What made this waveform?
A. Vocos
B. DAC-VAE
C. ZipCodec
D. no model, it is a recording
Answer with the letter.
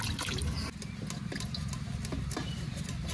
D